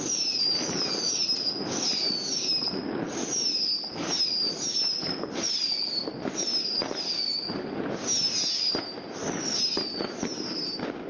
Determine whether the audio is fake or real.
real